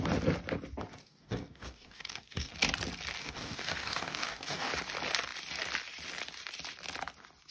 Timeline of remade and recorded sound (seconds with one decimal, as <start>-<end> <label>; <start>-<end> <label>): 0.0-1.0 recorded; 1.0-2.5 remade; 2.5-3.2 recorded; 3.2-4.7 remade; 4.7-7.5 recorded